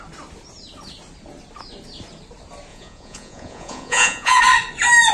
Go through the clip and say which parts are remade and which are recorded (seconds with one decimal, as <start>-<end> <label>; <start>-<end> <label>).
0.0-2.7 recorded; 2.7-4.4 remade; 4.4-5.1 recorded